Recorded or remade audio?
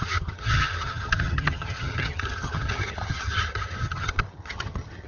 remade